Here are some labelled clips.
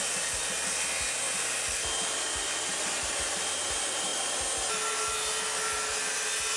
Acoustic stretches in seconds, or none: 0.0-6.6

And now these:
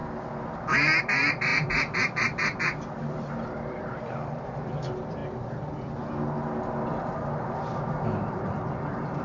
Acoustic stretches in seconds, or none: 0.0-1.0; 5.2-8.2

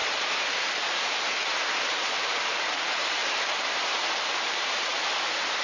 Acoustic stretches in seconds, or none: 0.0-1.0; 1.4-2.3

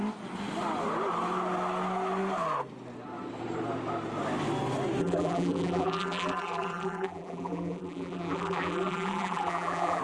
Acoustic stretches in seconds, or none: 0.0-5.0

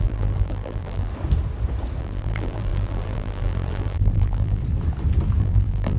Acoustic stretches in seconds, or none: 1.1-2.0; 4.6-5.4